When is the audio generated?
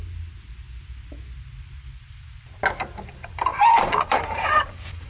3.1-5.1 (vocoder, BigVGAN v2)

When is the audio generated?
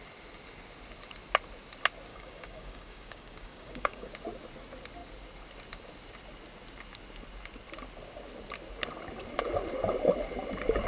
2.1-4.1 (codec, DAC)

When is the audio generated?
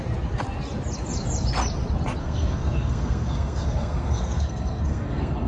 2.2-5.5 (codec, SNAC)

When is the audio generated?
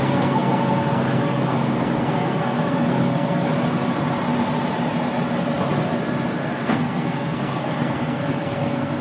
0.0-3.5 (codec, SNAC); 6.3-9.0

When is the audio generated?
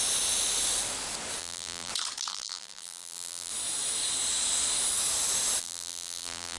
1.4-1.9 (vocoder, BigVGAN v2); 2.3-3.5; 5.6-6.6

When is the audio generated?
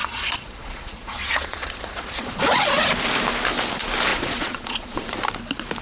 0.0-2.7 (vocoder, Vocos); 4.1-5.1